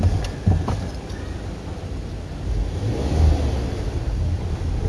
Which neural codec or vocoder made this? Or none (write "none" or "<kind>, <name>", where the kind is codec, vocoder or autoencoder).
none